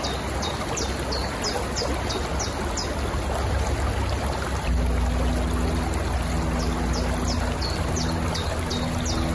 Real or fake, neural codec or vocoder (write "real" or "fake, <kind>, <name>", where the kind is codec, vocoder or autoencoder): real